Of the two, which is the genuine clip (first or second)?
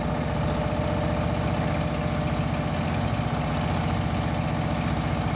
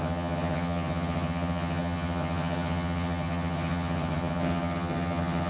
first